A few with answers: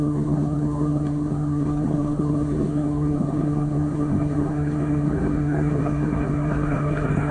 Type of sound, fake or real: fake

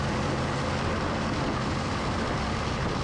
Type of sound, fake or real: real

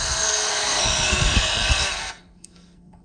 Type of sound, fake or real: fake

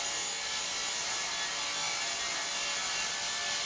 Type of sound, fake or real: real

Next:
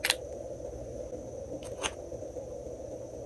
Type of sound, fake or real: real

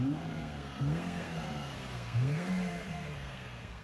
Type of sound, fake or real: fake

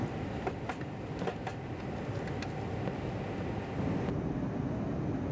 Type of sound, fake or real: real